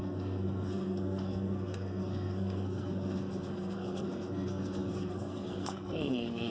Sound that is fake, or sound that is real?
fake